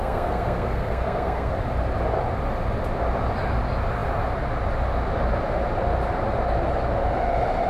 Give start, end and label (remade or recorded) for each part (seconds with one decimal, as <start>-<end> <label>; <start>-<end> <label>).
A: 0.0-1.5 remade; 1.5-7.7 recorded